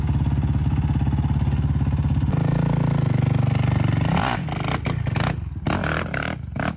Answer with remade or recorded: recorded